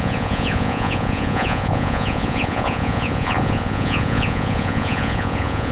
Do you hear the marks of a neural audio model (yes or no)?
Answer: yes